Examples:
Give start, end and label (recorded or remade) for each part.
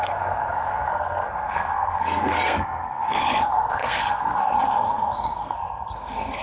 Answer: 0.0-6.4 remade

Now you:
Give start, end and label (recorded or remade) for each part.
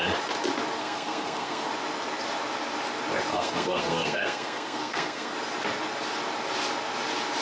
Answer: 0.0-0.8 recorded; 0.8-1.7 remade; 1.7-3.3 recorded; 3.3-5.3 remade; 5.3-7.4 recorded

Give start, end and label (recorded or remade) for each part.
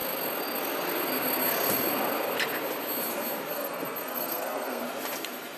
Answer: 0.0-3.5 recorded; 3.5-4.8 remade; 4.8-5.6 recorded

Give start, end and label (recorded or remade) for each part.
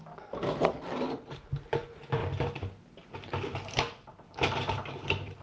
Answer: 0.0-5.4 recorded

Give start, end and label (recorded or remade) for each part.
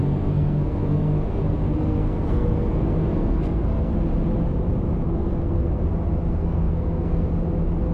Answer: 0.0-3.9 remade; 3.9-5.1 recorded; 5.1-5.8 remade; 5.8-6.3 recorded; 6.3-7.3 remade; 7.3-7.9 recorded